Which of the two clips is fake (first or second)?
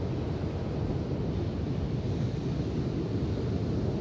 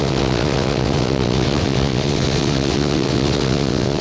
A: second